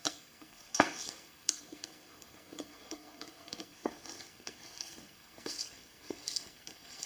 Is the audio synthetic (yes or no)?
yes